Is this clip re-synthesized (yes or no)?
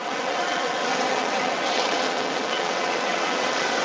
yes